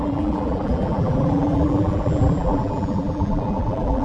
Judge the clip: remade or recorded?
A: remade